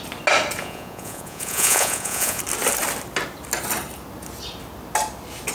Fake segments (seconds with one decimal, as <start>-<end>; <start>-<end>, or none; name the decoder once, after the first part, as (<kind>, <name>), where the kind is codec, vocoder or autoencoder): 0.6-2.4 (vocoder, Vocos)